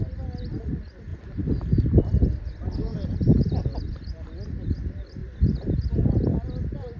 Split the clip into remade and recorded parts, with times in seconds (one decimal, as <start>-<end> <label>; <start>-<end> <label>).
0.0-1.1 recorded; 1.1-2.0 remade; 2.0-7.0 recorded

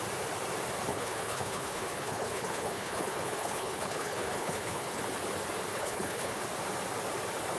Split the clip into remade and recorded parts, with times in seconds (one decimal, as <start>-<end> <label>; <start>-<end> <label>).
0.0-0.9 recorded; 0.9-5.0 remade; 5.0-5.7 recorded; 5.7-6.4 remade; 6.4-7.6 recorded

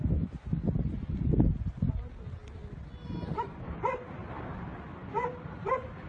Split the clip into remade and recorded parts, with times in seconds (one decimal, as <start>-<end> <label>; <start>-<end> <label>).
0.0-2.4 recorded; 2.4-4.0 remade; 4.0-6.1 recorded

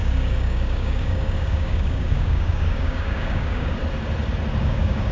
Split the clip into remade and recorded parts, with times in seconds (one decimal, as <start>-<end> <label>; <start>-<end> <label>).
0.0-3.8 remade; 3.8-4.6 recorded; 4.6-5.1 remade

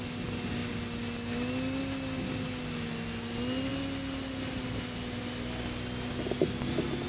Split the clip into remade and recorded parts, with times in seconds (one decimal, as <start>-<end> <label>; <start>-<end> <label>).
0.0-7.1 recorded

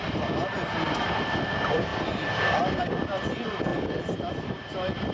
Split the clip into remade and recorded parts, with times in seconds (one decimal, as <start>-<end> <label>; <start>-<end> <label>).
0.0-5.1 recorded